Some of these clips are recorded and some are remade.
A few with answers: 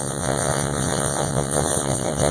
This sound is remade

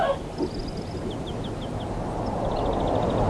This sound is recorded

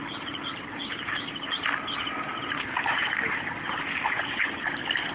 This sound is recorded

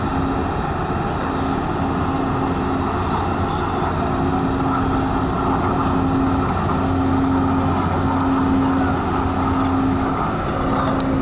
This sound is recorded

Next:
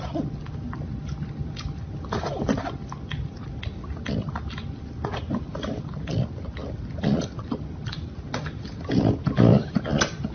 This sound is recorded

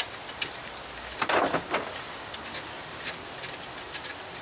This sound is recorded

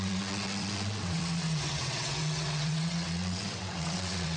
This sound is remade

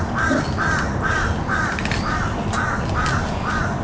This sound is recorded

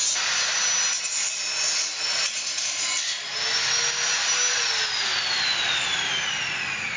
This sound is recorded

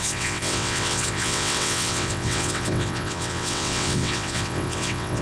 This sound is remade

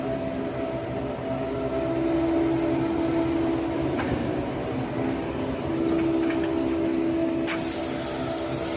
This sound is recorded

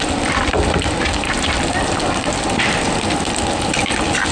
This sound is recorded